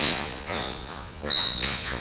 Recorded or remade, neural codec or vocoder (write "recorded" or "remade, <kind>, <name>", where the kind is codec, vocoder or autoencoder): remade, vocoder, Vocos